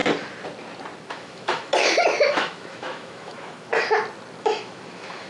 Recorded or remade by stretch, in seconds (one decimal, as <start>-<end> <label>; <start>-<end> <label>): 0.0-1.1 recorded; 1.1-1.7 remade; 1.7-2.3 recorded; 2.3-3.7 remade; 3.7-4.4 recorded; 4.4-5.3 remade